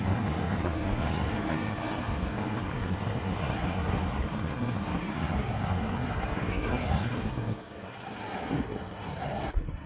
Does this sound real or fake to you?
fake